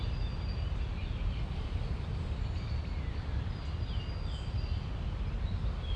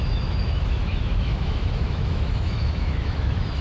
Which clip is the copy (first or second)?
second